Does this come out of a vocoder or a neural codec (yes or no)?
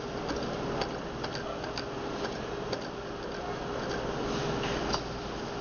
no